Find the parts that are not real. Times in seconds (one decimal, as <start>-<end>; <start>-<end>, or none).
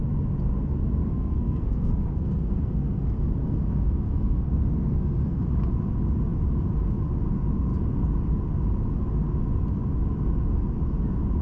1.0-5.4